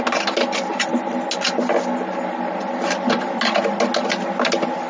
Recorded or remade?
recorded